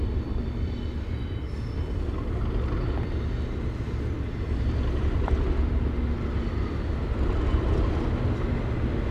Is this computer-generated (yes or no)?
no